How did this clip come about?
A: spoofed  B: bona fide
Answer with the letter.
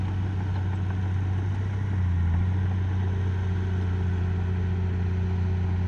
B